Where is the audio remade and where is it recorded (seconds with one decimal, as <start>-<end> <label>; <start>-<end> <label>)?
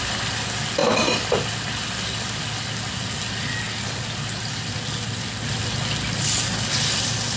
0.0-0.8 recorded; 0.8-2.4 remade; 2.4-7.4 recorded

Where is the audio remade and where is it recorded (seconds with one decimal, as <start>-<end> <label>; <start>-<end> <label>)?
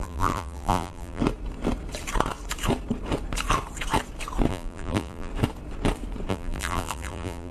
0.0-1.2 remade; 1.2-4.5 recorded; 4.5-5.3 remade; 5.3-6.3 recorded; 6.3-7.5 remade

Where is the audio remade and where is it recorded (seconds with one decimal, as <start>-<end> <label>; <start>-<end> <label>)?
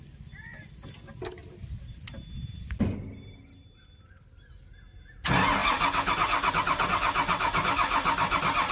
0.0-1.4 recorded; 1.4-2.8 remade; 2.8-8.7 recorded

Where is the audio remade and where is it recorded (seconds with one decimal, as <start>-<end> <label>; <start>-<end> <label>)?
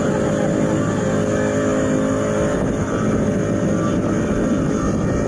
0.0-5.3 recorded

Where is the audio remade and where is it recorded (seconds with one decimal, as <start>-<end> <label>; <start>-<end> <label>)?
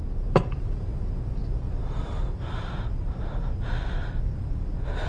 0.0-5.1 remade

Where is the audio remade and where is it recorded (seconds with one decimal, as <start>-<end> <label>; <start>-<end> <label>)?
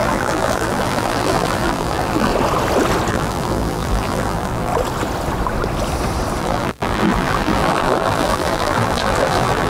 0.0-2.3 remade; 2.3-3.1 recorded; 3.1-4.7 remade; 4.7-6.4 recorded; 6.4-9.7 remade